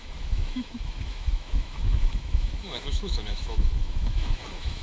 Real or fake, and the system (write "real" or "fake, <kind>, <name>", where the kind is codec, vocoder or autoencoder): fake, autoencoder, DAC-VAE